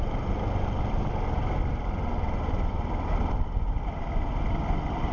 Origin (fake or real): real